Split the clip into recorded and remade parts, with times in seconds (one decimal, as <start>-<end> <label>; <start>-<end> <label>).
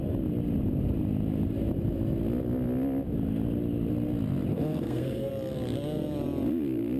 0.0-4.5 recorded; 4.5-5.3 remade; 5.3-7.0 recorded